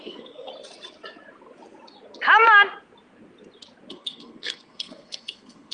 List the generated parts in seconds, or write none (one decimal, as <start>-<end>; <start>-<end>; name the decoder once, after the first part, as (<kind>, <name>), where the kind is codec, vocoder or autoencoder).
0.0-0.5 (codec, SNAC); 3.9-5.7